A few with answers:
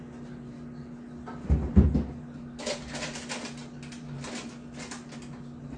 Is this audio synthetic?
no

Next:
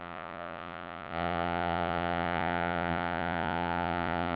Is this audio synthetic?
yes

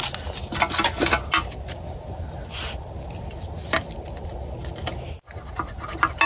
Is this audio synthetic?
no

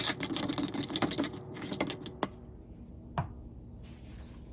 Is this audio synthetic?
no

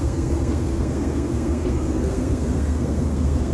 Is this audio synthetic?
yes